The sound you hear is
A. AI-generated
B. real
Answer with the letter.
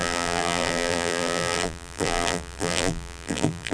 A